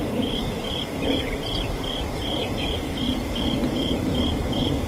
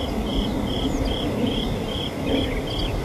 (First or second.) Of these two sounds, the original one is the second